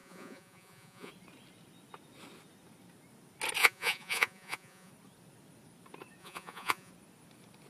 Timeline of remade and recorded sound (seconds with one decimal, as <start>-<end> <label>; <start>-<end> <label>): 0.0-1.1 remade; 1.1-3.6 recorded; 3.6-4.9 remade; 4.9-6.2 recorded; 6.2-6.9 remade; 6.9-7.7 recorded